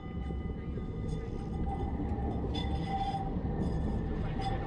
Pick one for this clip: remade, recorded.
recorded